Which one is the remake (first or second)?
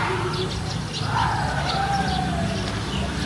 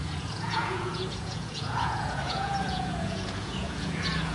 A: second